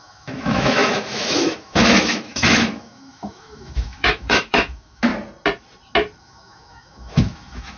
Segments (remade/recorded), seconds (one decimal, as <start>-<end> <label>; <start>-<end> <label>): 0.0-5.1 remade; 5.1-6.2 recorded; 6.2-7.8 remade